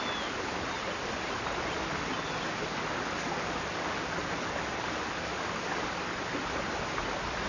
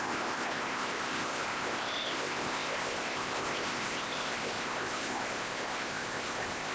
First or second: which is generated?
second